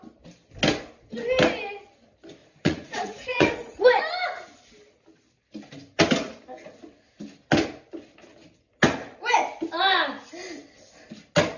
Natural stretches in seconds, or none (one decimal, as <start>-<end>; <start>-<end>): 0.0-2.4; 4.0-11.6